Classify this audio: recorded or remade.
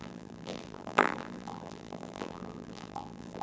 remade